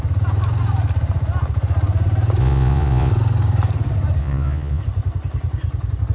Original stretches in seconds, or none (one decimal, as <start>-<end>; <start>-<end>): 0.0-2.4; 3.1-4.2; 4.8-6.1